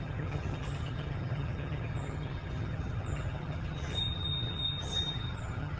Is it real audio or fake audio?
fake